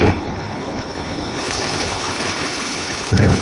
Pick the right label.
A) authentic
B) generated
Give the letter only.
B